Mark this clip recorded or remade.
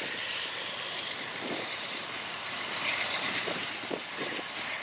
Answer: remade